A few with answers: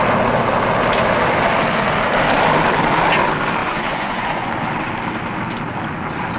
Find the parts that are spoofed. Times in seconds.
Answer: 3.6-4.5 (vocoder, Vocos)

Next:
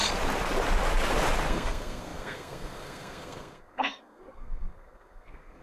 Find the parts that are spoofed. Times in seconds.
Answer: 1.5-5.6 (codec, SNAC)

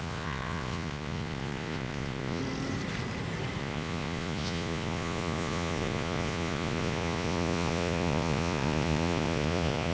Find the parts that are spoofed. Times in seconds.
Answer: 0.0-2.4 (vocoder, Vocos); 3.6-9.9

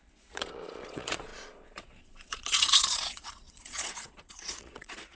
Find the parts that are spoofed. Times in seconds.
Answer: 0.0-5.1 (vocoder, Vocos)